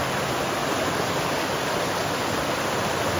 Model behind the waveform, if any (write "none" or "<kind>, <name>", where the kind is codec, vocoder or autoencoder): none